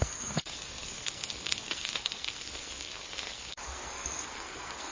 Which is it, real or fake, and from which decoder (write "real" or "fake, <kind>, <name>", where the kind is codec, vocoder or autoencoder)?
fake, codec, SNAC